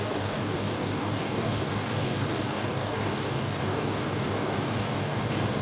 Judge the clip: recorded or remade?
remade